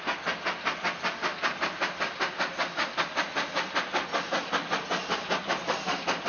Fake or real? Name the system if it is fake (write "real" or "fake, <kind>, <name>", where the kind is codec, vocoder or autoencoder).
real